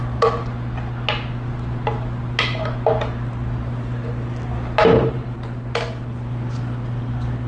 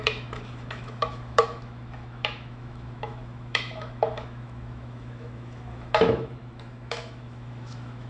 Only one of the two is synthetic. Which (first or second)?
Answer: second